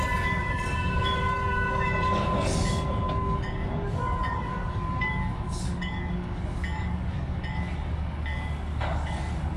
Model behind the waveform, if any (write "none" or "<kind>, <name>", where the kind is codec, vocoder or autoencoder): codec, DAC